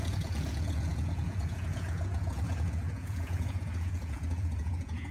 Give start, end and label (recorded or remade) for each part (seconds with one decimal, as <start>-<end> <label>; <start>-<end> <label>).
0.0-5.1 remade

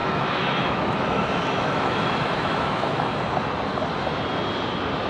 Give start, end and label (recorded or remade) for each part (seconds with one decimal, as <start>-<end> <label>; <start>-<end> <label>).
0.0-3.1 remade; 3.1-5.1 recorded

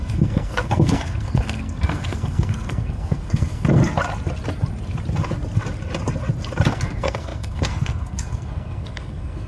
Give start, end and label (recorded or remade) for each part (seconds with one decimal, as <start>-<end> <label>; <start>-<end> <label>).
0.0-3.8 remade; 3.8-6.7 recorded; 6.7-9.5 remade

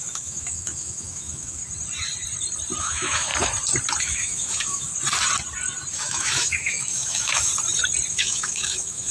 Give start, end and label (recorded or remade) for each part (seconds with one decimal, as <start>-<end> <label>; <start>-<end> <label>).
0.0-1.6 remade; 1.6-2.8 recorded; 2.8-3.3 remade; 3.3-4.0 recorded; 4.0-4.9 remade; 4.9-5.9 recorded; 5.9-7.5 remade; 7.5-8.1 recorded; 8.1-9.1 remade

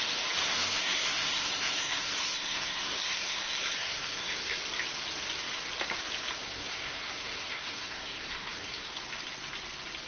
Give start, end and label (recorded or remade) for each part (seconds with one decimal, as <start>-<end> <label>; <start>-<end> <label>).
0.0-0.4 recorded; 0.4-4.6 remade; 4.6-6.4 recorded; 6.4-8.9 remade; 8.9-10.1 recorded

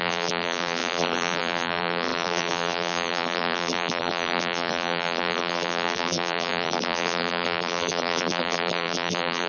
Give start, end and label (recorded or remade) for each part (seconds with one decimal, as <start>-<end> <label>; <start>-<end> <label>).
0.0-9.5 remade